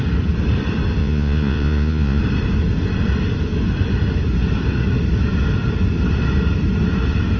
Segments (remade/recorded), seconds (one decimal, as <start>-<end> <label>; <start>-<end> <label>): 0.0-1.0 recorded; 1.0-2.2 remade; 2.2-7.4 recorded

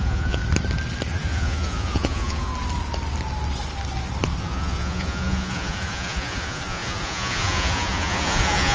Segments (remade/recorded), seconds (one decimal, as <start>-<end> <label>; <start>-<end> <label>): 0.0-0.4 remade; 0.4-1.1 recorded; 1.1-2.5 remade; 2.5-4.4 recorded; 4.4-8.7 remade

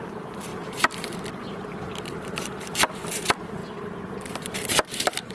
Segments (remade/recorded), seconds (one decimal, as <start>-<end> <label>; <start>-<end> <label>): 0.0-3.6 remade; 3.6-4.4 recorded; 4.4-5.3 remade

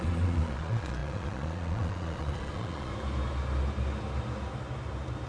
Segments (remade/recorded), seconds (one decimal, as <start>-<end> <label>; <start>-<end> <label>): 0.0-2.9 remade; 2.9-5.3 recorded

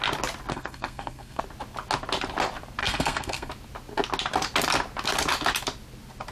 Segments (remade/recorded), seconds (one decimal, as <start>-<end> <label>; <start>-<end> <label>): 0.0-0.5 recorded; 0.5-1.4 remade; 1.4-2.8 recorded; 2.8-3.5 remade; 3.5-6.3 recorded

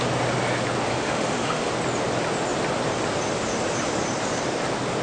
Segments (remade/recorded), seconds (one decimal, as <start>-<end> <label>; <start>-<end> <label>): 0.0-0.9 recorded; 0.9-1.7 remade; 1.7-5.0 recorded